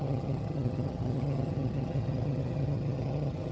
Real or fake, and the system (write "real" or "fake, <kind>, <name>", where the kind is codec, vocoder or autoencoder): fake, vocoder, HiFi-GAN